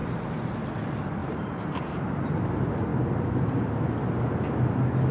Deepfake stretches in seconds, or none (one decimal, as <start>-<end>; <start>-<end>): 0.0-0.7; 1.2-2.3; 2.9-3.9